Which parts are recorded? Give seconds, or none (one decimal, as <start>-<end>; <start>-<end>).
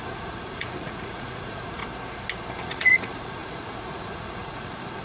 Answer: 1.8-2.6